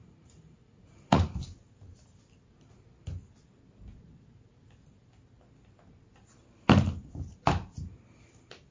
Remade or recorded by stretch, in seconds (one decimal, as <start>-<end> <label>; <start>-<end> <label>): 0.0-1.4 remade; 1.4-8.7 recorded